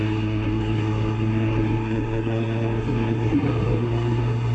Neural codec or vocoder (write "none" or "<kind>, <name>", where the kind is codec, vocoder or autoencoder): codec, SNAC